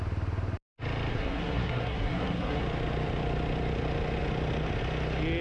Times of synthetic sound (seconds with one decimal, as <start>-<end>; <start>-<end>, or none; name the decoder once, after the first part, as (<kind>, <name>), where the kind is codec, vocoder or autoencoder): 1.1-2.6 (codec, SNAC)